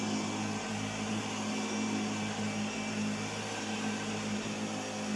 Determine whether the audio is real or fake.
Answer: real